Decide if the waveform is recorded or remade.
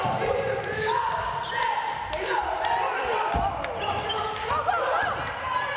recorded